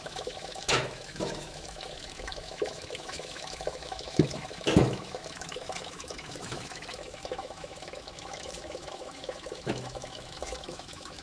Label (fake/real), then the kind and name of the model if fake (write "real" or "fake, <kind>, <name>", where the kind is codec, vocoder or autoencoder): fake, autoencoder, DAC-VAE